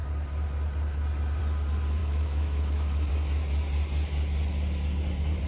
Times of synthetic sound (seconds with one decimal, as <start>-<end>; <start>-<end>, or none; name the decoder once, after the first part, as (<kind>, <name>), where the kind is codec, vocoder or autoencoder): 2.0-3.1 (autoencoder, DAC-VAE)